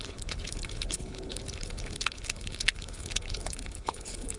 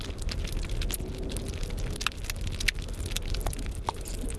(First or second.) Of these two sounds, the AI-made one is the first